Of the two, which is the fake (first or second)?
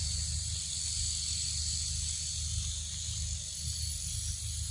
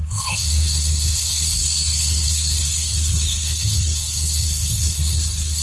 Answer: second